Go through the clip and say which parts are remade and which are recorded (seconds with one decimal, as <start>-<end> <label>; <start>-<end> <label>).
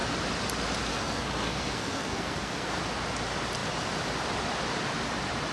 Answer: 0.0-0.9 recorded; 0.9-2.8 remade; 2.8-5.5 recorded